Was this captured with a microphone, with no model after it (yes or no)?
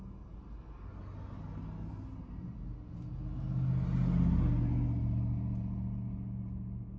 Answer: yes